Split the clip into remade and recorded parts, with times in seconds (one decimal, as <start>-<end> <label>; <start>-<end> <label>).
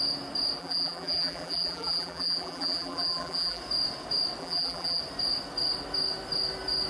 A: 0.0-0.6 recorded; 0.6-3.6 remade; 3.6-4.4 recorded; 4.4-5.0 remade; 5.0-6.9 recorded